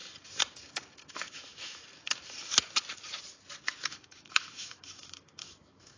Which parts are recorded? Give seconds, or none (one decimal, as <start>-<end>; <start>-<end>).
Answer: 0.0-1.1; 1.8-3.8